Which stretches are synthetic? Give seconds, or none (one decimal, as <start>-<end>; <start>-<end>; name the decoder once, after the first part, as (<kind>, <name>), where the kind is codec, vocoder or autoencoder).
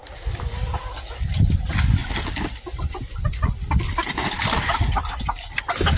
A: 2.0-5.6 (vocoder, BigVGAN v2)